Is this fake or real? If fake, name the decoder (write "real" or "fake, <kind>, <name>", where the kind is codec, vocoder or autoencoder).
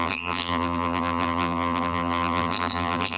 fake, vocoder, BigVGAN v2